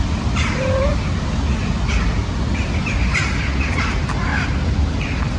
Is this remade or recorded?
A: recorded